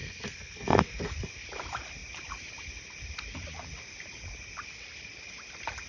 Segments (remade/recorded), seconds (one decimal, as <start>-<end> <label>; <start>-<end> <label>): 0.0-1.1 remade; 1.1-5.9 recorded